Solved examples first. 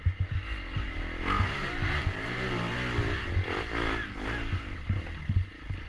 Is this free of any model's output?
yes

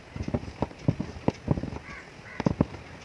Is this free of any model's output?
yes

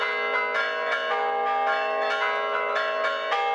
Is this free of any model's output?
yes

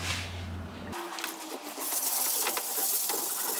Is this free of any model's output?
yes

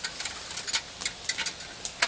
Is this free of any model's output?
yes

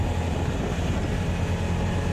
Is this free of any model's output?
yes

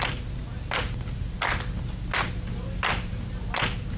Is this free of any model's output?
yes